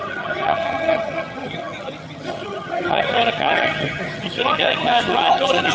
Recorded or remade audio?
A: remade